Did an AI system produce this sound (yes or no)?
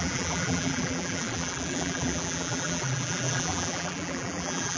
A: yes